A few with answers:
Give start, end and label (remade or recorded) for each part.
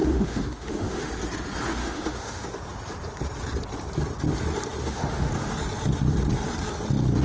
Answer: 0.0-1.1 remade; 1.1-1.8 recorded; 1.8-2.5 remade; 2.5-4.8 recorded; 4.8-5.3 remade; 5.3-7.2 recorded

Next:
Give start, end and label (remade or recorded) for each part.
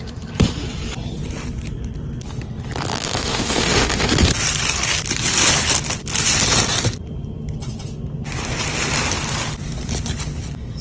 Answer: 0.0-2.9 recorded; 2.9-4.1 remade; 4.1-10.8 recorded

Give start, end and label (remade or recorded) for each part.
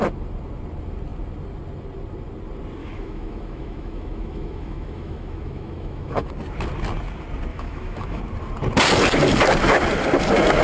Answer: 0.0-2.8 recorded; 2.8-6.3 remade; 6.3-7.5 recorded; 7.5-8.2 remade; 8.2-10.6 recorded